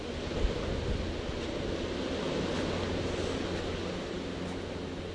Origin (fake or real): real